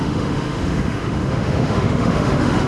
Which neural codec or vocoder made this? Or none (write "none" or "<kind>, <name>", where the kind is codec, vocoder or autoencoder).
autoencoder, DAC-VAE